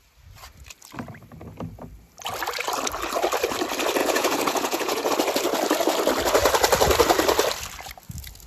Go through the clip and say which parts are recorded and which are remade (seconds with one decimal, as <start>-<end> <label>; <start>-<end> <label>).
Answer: 0.0-4.0 recorded; 4.0-5.1 remade; 5.1-8.5 recorded